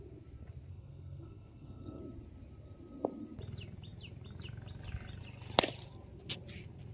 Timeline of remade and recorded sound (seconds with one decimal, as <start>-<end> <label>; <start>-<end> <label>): 0.0-0.7 recorded; 0.7-2.0 remade; 2.0-6.9 recorded